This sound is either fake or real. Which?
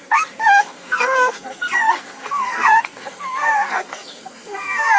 fake